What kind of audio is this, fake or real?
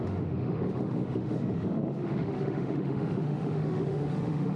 fake